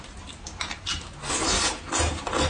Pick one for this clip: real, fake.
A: real